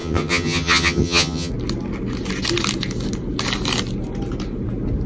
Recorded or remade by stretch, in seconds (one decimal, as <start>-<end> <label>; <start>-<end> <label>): 0.0-1.5 remade; 1.5-5.1 recorded

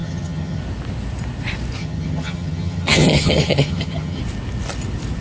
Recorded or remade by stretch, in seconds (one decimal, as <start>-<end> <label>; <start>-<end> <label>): 0.0-0.6 remade; 0.6-1.8 recorded; 1.8-4.2 remade; 4.2-5.2 recorded